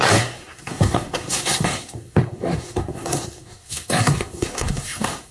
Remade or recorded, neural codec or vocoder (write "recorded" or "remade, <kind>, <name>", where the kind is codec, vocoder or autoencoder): remade, codec, SNAC